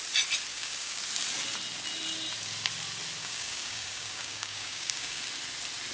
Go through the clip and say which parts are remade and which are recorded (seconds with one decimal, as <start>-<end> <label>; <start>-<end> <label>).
0.0-0.5 recorded; 0.5-1.0 remade; 1.0-3.2 recorded; 3.2-5.2 remade; 5.2-5.9 recorded